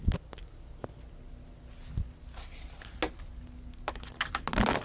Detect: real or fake real